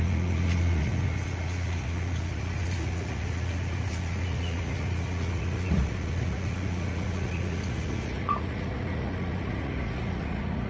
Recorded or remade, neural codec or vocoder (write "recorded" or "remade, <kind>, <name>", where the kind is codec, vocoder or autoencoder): remade, vocoder, Vocos